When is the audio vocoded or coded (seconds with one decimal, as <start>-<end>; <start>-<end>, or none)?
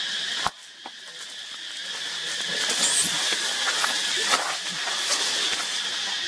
none